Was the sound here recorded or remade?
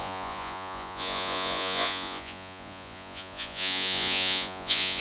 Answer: remade